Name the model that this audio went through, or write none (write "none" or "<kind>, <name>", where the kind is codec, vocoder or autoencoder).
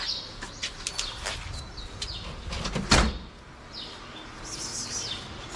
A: none